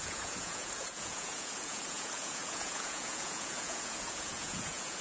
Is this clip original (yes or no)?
no